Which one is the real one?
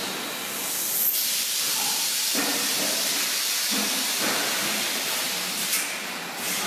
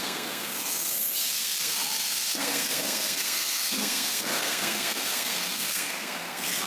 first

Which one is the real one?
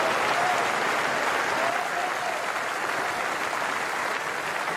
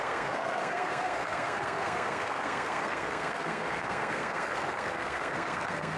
first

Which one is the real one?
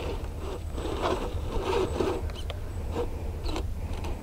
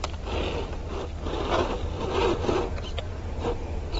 second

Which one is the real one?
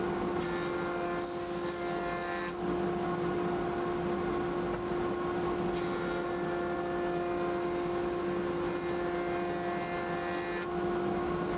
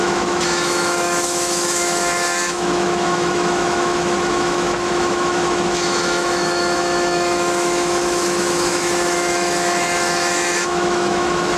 first